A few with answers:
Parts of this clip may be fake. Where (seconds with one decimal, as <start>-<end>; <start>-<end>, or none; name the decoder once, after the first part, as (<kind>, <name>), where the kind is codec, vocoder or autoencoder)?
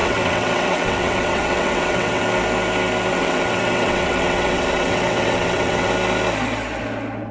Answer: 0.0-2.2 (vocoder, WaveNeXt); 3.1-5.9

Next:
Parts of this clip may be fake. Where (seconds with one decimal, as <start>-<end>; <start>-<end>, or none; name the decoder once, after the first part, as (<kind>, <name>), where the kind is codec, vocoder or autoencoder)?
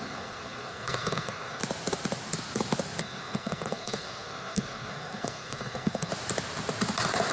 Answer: 0.0-1.6 (codec, SNAC); 3.0-6.1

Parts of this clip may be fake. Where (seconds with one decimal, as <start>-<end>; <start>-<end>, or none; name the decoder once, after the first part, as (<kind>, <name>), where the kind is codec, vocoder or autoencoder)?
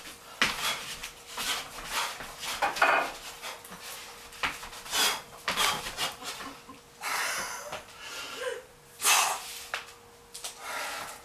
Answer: 8.5-9.0 (vocoder, BigVGAN v2)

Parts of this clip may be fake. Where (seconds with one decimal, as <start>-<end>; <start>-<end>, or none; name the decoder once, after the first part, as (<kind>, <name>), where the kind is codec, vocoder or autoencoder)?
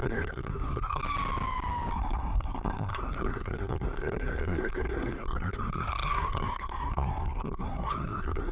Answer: 0.0-1.0 (codec, SNAC); 1.9-8.5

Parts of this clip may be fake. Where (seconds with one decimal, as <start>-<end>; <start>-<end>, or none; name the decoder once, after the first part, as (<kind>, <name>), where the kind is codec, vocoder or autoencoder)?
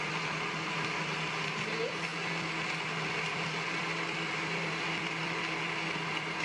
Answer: none